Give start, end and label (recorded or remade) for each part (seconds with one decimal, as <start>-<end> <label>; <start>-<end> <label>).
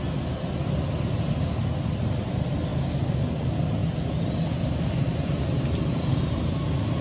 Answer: 0.0-7.0 recorded